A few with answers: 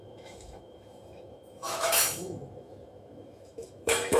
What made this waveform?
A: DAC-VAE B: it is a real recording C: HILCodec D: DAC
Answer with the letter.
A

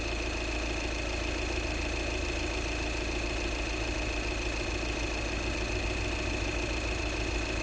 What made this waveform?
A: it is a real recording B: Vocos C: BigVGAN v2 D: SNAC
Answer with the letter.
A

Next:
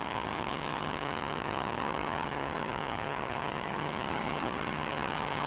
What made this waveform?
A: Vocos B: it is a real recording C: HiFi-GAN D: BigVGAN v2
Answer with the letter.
C